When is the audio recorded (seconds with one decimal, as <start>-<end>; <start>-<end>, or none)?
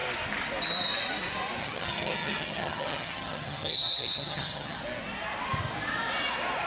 0.0-1.6; 4.8-6.7